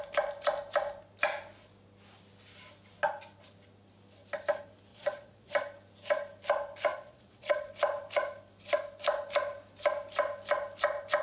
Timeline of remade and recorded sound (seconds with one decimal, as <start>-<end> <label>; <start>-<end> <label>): 0.0-4.9 recorded; 4.9-5.5 remade; 5.5-6.9 recorded; 6.9-7.7 remade; 7.7-11.2 recorded